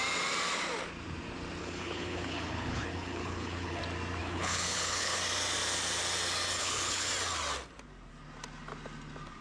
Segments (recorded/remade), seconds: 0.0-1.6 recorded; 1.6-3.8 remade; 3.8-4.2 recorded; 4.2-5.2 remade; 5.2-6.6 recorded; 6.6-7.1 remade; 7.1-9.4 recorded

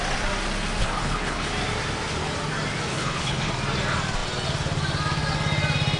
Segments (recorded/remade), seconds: 0.0-0.8 recorded; 0.8-1.5 remade; 1.5-2.9 recorded; 2.9-3.5 remade; 3.5-6.0 recorded